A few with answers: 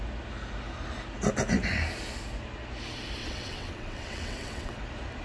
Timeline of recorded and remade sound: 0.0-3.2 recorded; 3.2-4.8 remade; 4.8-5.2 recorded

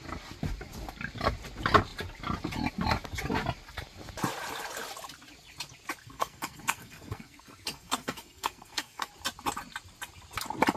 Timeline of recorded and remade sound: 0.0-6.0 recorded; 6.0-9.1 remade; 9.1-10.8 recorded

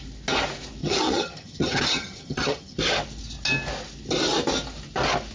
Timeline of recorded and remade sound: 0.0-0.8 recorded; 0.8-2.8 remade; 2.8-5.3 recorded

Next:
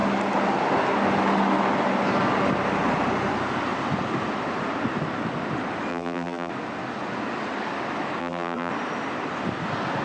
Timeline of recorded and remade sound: 0.0-5.9 recorded; 5.9-6.5 remade; 6.5-8.2 recorded; 8.2-8.7 remade; 8.7-10.0 recorded